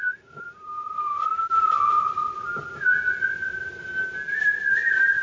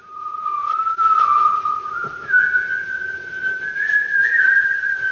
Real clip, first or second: first